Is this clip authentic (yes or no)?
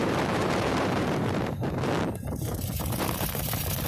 no